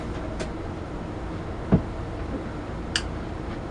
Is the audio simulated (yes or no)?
no